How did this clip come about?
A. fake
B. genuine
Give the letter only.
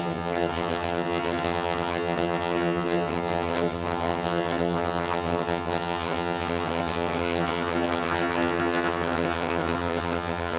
A